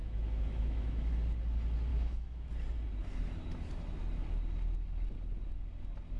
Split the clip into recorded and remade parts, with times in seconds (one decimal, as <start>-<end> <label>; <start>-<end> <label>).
0.0-1.1 remade; 1.1-1.9 recorded; 1.9-2.5 remade; 2.5-6.2 recorded